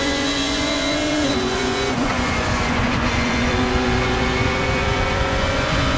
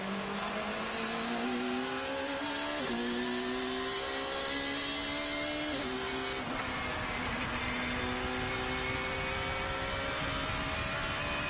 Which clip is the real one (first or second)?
second